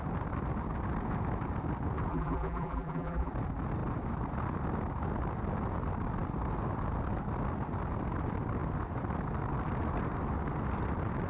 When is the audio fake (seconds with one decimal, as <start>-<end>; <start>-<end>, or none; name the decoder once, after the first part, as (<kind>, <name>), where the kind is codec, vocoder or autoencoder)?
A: 2.1-3.3 (vocoder, BigVGAN v2)